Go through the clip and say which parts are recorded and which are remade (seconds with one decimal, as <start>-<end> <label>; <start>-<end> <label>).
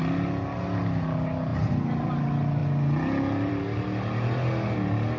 0.0-5.2 recorded